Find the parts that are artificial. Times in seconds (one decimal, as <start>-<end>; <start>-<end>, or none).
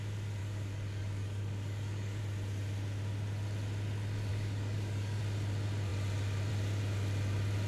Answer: 0.4-2.2; 4.3-5.2